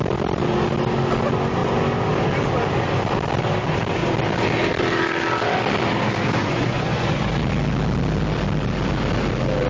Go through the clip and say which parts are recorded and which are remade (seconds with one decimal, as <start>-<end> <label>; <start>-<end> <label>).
0.0-6.4 recorded; 6.4-7.3 remade; 7.3-9.7 recorded

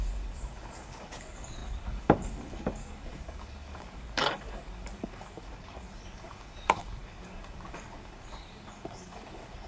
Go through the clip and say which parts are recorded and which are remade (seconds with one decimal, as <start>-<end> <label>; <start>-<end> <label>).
0.0-9.7 remade

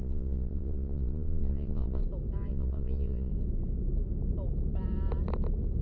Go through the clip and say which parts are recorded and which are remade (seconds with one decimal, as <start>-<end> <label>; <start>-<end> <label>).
0.0-2.0 remade; 2.0-2.5 recorded; 2.5-3.3 remade; 3.3-5.8 recorded

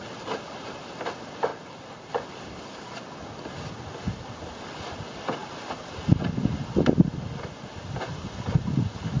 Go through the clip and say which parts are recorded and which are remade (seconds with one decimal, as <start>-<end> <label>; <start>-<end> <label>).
0.0-9.2 recorded

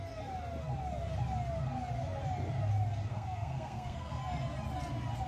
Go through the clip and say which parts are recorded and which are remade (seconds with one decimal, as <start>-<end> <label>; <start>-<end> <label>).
0.0-3.1 recorded; 3.1-4.2 remade; 4.2-5.3 recorded

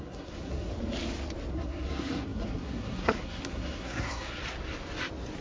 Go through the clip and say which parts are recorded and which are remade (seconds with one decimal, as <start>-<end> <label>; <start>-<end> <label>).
0.0-0.7 remade; 0.7-1.5 recorded; 1.5-4.4 remade; 4.4-5.4 recorded

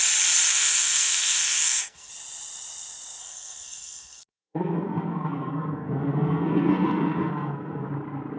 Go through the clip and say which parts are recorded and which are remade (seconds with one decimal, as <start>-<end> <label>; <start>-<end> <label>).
0.0-0.5 recorded; 0.5-2.1 remade; 2.1-3.2 recorded; 3.2-7.9 remade; 7.9-8.4 recorded